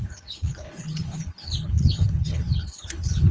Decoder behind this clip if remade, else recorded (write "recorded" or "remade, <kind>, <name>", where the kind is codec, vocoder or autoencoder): remade, codec, HILCodec